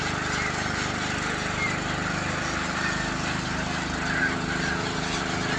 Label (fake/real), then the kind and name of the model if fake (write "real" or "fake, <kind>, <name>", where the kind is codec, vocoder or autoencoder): real